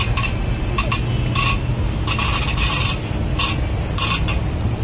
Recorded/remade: recorded